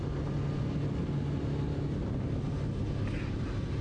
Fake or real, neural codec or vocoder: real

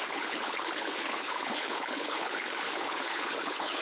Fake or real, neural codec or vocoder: fake, codec, HILCodec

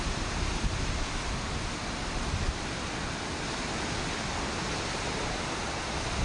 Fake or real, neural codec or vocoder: real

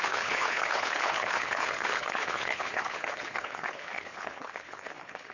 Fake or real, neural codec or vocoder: fake, codec, HILCodec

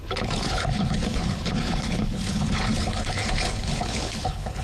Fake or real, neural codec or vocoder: fake, codec, HILCodec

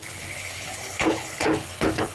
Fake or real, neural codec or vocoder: fake, codec, HILCodec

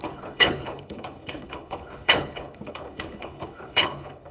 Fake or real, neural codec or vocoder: fake, codec, HILCodec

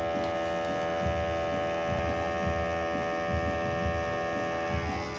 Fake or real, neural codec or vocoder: real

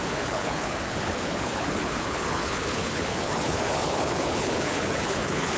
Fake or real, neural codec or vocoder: fake, codec, HILCodec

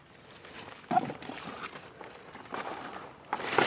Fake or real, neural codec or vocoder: real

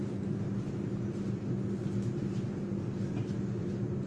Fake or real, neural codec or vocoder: real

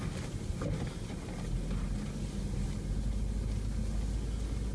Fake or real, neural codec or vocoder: real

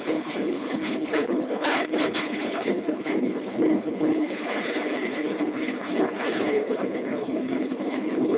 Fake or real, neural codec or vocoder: fake, codec, HILCodec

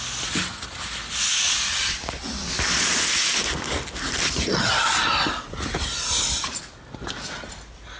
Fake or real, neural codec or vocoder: real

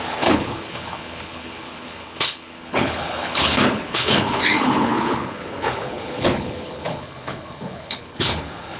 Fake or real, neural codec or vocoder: fake, codec, HILCodec